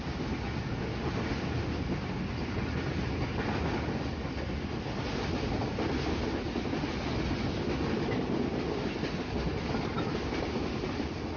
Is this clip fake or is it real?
real